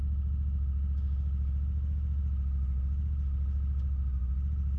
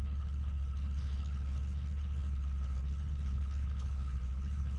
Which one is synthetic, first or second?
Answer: second